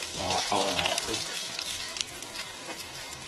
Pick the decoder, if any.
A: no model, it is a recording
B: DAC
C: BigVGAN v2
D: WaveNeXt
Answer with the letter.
B